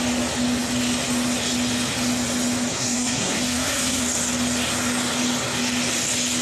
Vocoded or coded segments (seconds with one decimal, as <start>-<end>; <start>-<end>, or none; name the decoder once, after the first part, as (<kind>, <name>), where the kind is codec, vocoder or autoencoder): 2.7-4.0 (codec, SNAC)